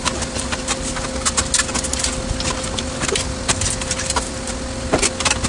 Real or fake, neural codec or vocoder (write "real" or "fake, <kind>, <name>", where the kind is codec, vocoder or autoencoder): real